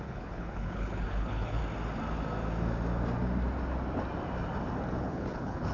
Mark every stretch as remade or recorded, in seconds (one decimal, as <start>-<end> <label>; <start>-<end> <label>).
0.0-1.6 remade; 1.6-5.0 recorded; 5.0-5.7 remade